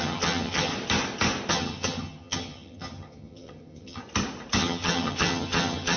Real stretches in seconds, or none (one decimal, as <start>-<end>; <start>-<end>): 0.7-1.5; 4.0-4.6